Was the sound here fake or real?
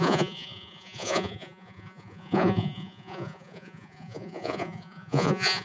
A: fake